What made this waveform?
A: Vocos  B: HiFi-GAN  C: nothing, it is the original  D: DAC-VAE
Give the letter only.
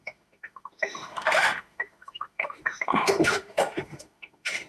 D